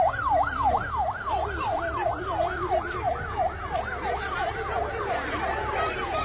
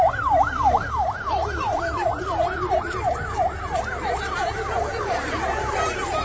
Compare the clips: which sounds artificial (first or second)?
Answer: second